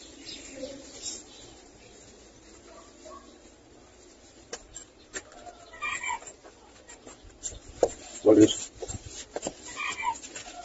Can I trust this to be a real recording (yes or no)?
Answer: yes